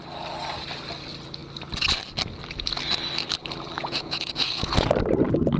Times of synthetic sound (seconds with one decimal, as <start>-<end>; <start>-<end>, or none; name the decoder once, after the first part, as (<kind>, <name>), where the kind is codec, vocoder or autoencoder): 3.8-4.9 (vocoder, Vocos)